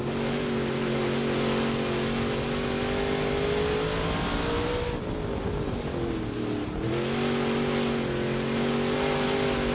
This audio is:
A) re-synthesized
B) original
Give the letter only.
B